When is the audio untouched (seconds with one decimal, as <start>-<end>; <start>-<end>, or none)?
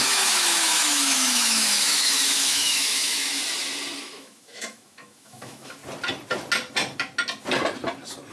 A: 3.4-4.0; 5.8-8.3